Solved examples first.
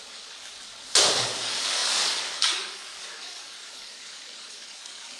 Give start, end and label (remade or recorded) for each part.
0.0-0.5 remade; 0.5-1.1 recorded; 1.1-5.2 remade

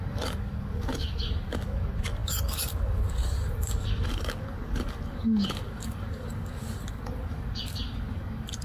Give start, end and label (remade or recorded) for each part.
0.0-8.6 remade

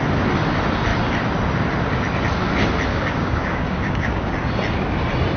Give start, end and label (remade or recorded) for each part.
0.0-2.9 recorded; 2.9-4.3 remade; 4.3-5.4 recorded